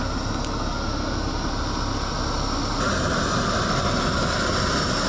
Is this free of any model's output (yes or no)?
yes